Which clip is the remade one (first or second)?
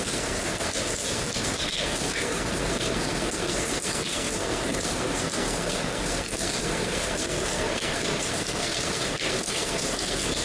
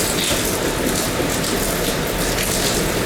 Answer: first